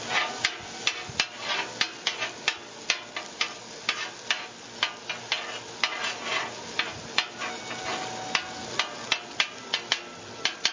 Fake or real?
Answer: real